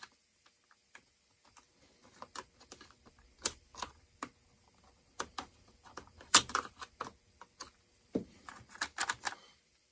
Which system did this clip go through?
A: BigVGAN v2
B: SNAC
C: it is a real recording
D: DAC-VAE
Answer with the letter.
A